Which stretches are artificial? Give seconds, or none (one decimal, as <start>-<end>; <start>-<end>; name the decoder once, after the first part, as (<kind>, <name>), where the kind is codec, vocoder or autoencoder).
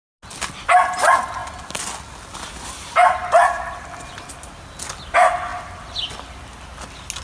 none